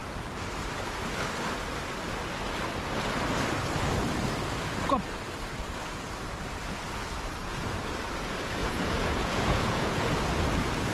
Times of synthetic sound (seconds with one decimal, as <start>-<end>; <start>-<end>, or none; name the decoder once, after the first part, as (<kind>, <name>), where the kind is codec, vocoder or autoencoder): 7.4-7.9 (vocoder, Vocos); 8.6-10.1